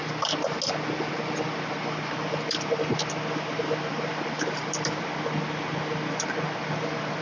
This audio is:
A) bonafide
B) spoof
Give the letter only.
A